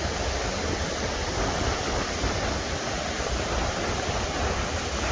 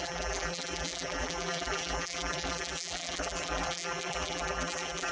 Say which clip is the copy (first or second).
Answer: second